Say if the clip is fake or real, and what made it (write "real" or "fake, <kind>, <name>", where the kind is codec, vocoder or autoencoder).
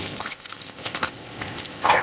fake, codec, ZipCodec